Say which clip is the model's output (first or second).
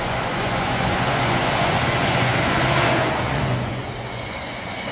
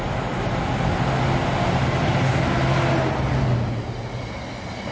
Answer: first